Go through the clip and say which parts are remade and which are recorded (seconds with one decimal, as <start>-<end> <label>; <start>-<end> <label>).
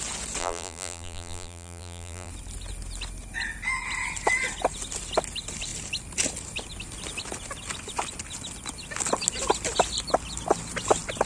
0.0-0.4 recorded; 0.4-2.3 remade; 2.3-11.3 recorded